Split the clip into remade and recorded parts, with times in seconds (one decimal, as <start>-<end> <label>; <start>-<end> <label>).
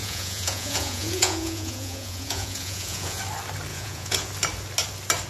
0.0-3.2 remade; 3.2-3.7 recorded; 3.7-4.3 remade; 4.3-5.3 recorded